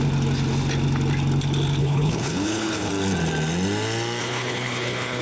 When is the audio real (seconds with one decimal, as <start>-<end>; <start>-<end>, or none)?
0.0-1.8; 2.9-4.2